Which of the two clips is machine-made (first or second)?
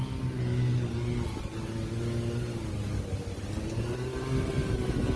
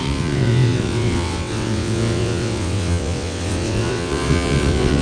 second